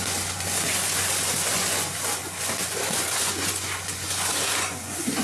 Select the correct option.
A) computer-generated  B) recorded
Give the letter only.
A